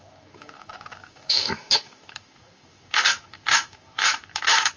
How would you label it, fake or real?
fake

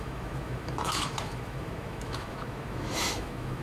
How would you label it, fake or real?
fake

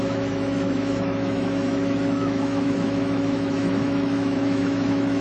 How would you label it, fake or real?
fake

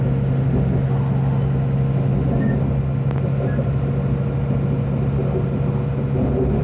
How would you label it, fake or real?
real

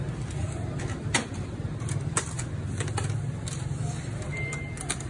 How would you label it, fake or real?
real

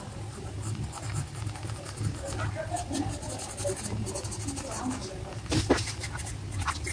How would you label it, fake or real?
real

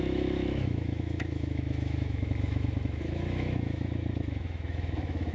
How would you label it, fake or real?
fake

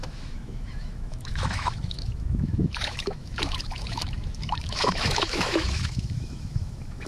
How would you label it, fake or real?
fake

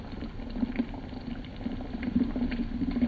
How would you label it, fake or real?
real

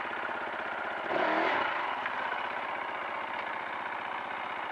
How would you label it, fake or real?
real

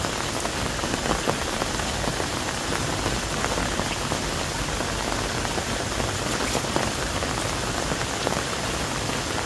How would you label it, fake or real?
real